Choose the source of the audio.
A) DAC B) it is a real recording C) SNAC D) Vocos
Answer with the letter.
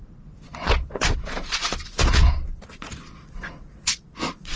D